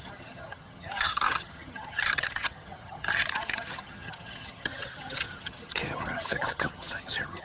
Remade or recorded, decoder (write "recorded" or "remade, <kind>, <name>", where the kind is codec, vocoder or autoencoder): remade, vocoder, HiFi-GAN